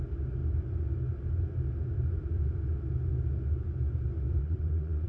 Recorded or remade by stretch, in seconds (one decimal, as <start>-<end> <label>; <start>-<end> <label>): 0.0-4.4 recorded; 4.4-5.1 remade